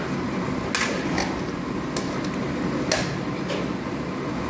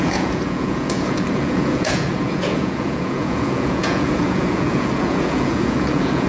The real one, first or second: first